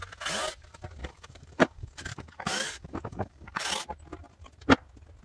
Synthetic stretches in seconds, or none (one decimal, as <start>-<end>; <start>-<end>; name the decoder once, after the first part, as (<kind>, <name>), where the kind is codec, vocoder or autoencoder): 1.0-3.7 (codec, DAC)